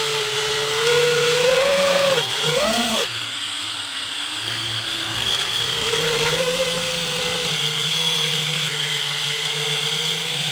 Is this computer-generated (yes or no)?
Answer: yes